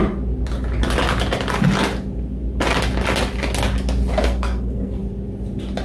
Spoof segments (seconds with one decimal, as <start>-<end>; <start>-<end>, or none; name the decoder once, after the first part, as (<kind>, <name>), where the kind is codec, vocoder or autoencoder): 4.2-5.0 (codec, SNAC)